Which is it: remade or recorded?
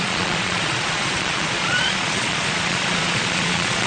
remade